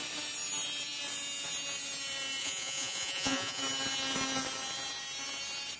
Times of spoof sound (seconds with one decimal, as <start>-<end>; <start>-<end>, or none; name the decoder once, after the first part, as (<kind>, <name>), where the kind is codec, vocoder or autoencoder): 2.4-3.6 (vocoder, Vocos)